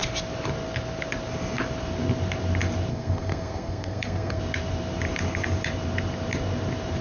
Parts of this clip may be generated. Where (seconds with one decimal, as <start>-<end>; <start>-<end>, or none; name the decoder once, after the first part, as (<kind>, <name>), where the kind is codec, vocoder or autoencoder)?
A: 2.9-4.4 (codec, SNAC)

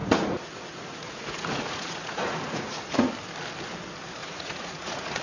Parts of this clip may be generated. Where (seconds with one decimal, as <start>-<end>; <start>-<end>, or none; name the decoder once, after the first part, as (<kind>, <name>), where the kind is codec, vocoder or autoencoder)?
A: 0.0-3.1 (vocoder, Vocos); 4.2-5.2

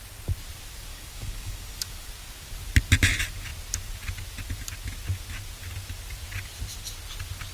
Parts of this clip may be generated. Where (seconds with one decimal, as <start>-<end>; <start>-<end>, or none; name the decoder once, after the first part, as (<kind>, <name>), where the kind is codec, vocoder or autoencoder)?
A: 0.9-2.1 (codec, DAC)

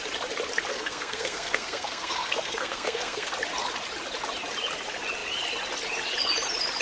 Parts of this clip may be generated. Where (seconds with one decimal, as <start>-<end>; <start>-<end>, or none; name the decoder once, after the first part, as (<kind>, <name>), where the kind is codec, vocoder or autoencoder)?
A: 0.7-3.3 (codec, SNAC)

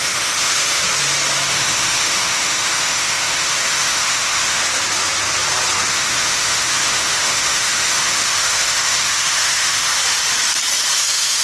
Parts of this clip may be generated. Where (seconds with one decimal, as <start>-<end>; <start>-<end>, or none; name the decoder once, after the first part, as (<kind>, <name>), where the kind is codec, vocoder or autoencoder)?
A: 0.0-0.8 (autoencoder, DAC-VAE); 1.5-4.6; 5.9-9.9; 11.0-11.4

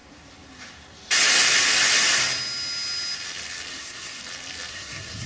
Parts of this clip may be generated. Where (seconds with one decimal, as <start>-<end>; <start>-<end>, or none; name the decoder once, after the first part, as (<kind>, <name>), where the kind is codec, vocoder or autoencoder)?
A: 3.7-4.2 (codec, SNAC); 4.7-5.3